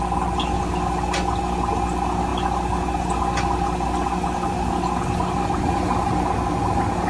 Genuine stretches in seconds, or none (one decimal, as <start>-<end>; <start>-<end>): 0.0-7.1